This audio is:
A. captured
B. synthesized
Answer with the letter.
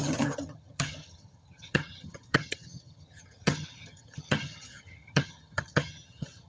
B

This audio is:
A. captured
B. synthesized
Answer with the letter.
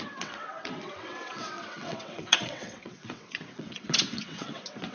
B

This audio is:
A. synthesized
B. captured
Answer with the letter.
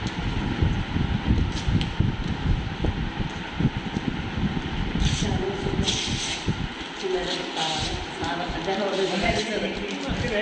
B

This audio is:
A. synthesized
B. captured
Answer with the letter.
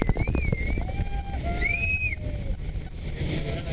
B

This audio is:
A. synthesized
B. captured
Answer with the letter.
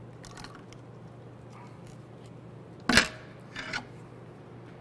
B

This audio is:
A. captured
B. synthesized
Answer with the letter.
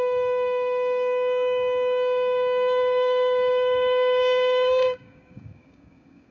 B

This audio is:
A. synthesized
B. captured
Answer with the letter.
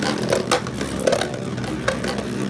B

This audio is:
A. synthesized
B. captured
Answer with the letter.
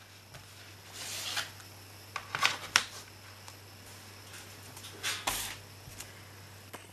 B